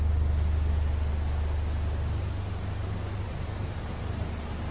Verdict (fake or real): real